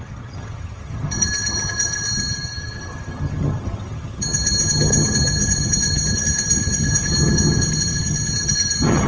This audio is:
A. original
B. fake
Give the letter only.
B